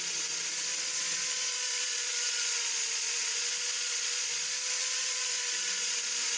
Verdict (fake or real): fake